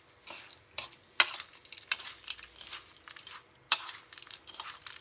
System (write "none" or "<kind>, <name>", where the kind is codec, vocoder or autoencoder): none